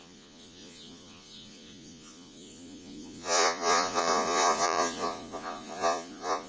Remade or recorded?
remade